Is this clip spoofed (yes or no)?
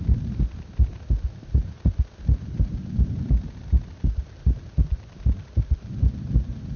no